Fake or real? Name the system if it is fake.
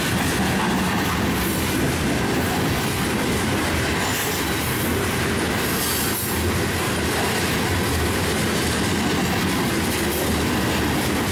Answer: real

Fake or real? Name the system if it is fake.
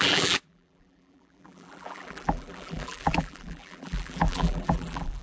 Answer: fake, vocoder, BigVGAN v2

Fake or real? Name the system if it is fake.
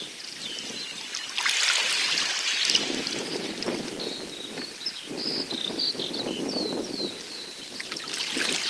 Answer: real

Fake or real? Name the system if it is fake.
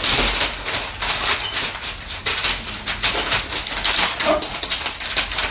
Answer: real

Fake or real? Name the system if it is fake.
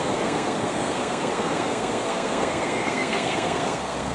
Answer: fake, codec, SNAC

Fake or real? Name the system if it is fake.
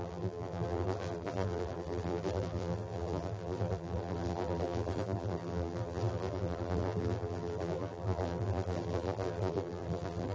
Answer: fake, vocoder, BigVGAN v2